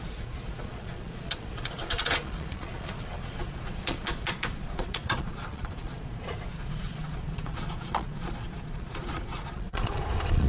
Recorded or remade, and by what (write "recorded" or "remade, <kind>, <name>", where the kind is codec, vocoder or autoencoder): remade, vocoder, Vocos